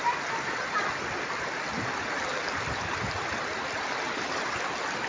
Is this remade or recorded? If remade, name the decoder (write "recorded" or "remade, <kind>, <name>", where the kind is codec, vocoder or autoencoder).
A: recorded